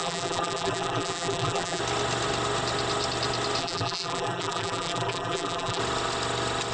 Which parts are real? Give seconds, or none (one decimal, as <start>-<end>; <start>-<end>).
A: 1.8-3.6; 5.8-6.7